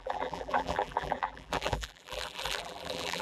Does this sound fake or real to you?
fake